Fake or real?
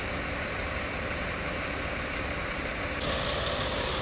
real